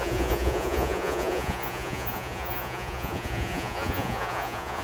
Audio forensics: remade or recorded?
remade